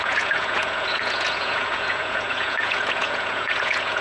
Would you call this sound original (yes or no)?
no